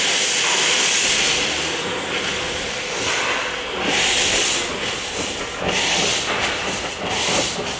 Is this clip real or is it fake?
real